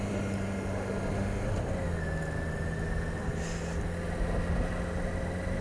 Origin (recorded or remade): recorded